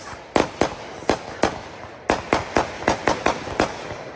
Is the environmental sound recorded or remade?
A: recorded